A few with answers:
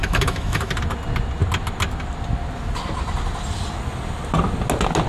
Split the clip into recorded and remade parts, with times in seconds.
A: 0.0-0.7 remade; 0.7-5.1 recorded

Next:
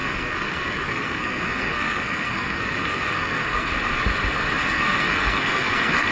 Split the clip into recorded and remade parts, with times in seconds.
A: 0.0-3.7 remade; 3.7-4.6 recorded; 4.6-6.1 remade

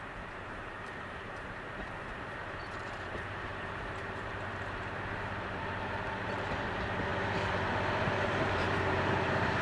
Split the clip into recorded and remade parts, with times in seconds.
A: 0.0-9.6 remade

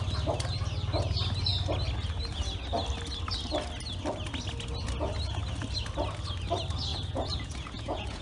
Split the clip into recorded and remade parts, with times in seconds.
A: 0.0-6.9 recorded; 6.9-8.2 remade